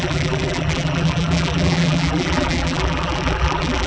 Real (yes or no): no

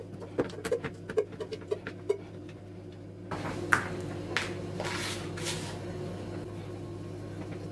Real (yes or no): yes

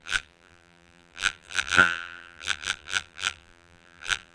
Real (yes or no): no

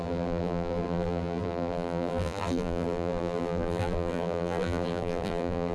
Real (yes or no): no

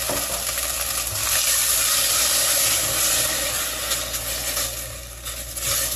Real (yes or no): yes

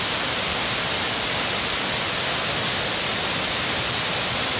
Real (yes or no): yes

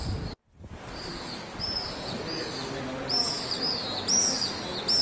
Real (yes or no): yes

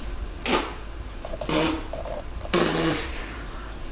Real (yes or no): no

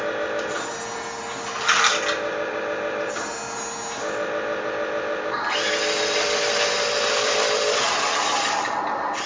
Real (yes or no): yes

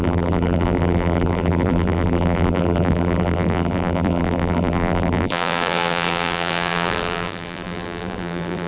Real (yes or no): no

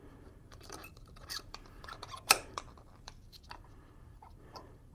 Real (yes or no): no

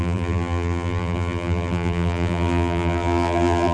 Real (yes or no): no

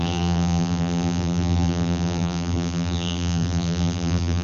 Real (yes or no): no